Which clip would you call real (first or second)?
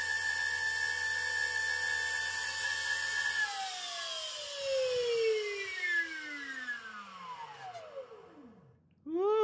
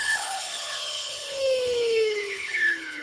first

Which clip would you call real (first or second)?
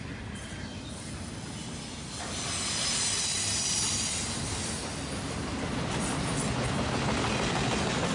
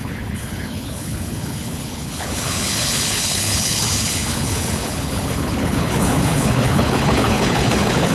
first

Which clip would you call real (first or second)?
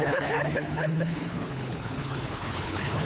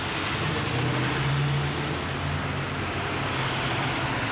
second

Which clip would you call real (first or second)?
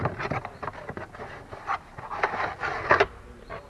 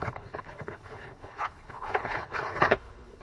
first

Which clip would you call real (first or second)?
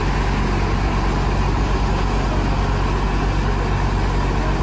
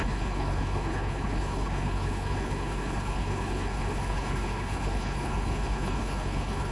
first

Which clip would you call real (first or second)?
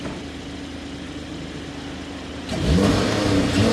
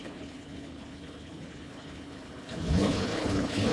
first